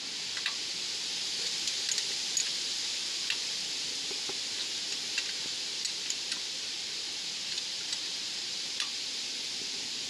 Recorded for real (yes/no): yes